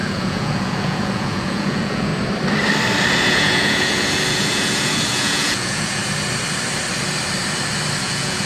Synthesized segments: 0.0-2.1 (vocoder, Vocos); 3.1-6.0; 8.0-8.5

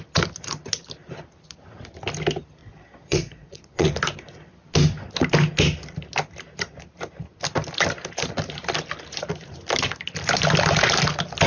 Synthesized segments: 2.6-3.9 (vocoder, Vocos)